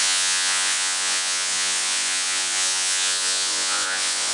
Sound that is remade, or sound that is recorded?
remade